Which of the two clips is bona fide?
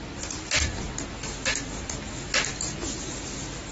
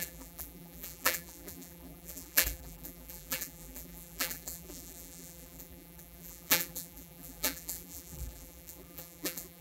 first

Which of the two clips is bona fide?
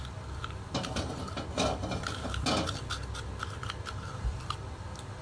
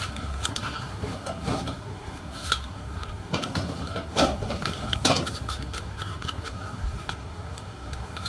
first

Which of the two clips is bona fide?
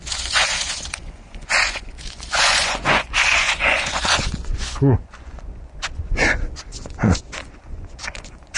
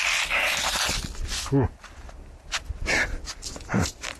second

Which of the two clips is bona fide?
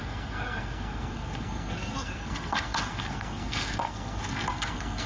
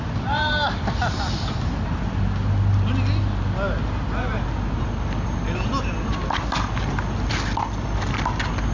second